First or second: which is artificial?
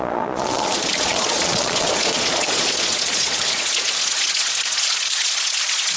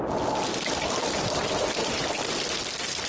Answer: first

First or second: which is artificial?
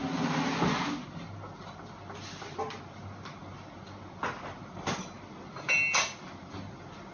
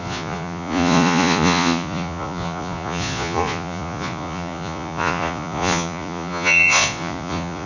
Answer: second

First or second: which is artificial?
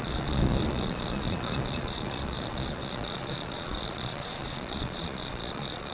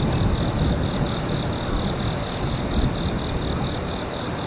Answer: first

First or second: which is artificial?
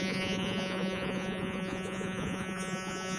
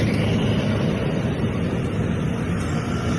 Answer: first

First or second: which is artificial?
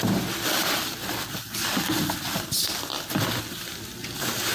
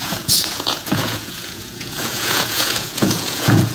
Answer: second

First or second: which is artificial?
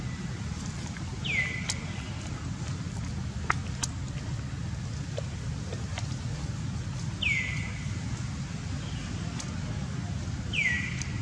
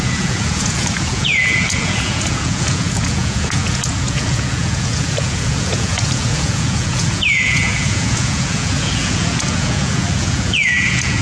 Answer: second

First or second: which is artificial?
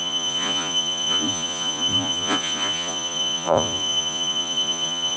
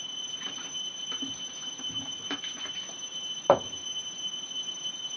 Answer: first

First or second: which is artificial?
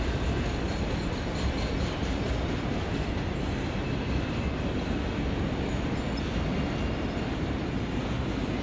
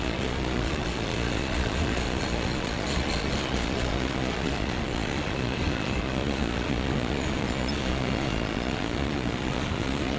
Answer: second